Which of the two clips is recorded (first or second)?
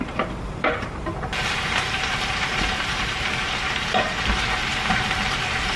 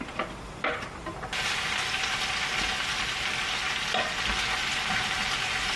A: second